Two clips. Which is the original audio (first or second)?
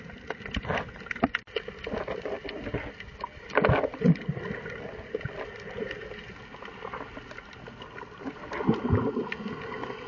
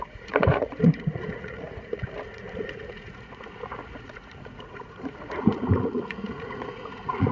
first